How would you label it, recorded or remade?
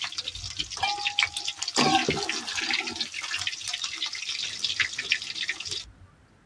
recorded